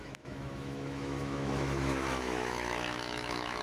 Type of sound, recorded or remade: remade